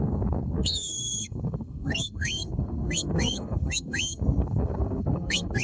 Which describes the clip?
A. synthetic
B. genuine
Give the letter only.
A